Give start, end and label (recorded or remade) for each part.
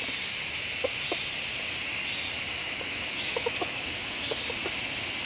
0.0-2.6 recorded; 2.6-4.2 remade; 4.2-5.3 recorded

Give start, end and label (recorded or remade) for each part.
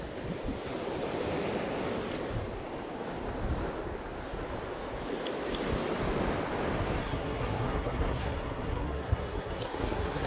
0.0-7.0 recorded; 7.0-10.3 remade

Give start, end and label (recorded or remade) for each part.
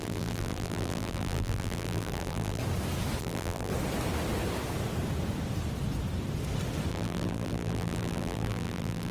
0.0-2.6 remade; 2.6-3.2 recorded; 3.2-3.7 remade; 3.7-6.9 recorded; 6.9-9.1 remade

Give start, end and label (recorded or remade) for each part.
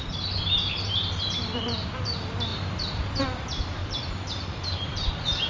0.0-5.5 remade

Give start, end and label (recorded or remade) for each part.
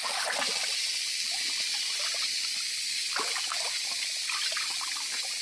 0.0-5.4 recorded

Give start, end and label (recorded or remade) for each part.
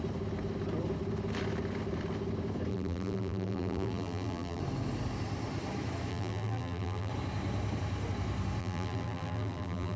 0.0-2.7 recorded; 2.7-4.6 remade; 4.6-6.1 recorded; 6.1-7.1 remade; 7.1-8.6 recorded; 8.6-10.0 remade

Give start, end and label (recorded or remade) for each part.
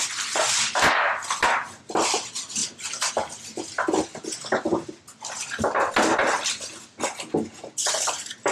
0.0-2.6 recorded; 2.6-5.9 remade; 5.9-8.5 recorded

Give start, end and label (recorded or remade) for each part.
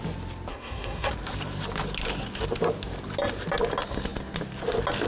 0.0-0.5 recorded; 0.5-1.1 remade; 1.1-5.1 recorded